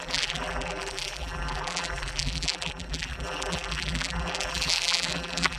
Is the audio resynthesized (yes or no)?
yes